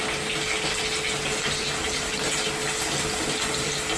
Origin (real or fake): real